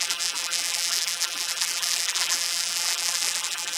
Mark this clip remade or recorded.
remade